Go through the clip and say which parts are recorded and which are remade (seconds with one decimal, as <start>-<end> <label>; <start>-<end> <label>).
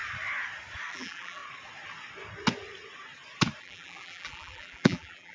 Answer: 0.0-0.9 recorded; 0.9-1.4 remade; 1.4-3.6 recorded; 3.6-5.3 remade